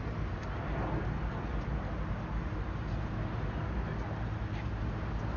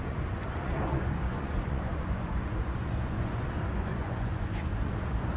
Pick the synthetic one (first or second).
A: second